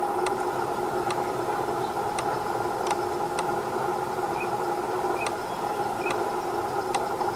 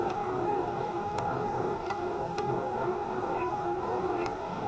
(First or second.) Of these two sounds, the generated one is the second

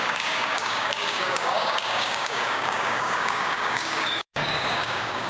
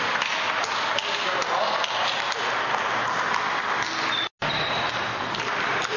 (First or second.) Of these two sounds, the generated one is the first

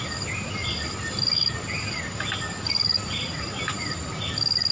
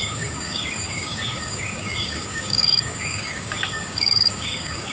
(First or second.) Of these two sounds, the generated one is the second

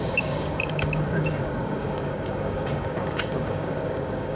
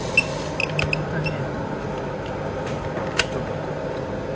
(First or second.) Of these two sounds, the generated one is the first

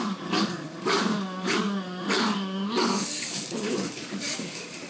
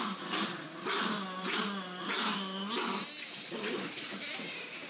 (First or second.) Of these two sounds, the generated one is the first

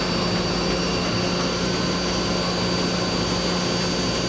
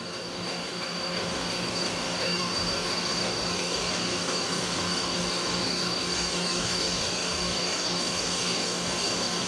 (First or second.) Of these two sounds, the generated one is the second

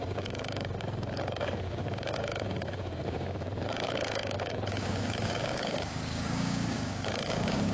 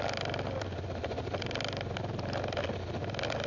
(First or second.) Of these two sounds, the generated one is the first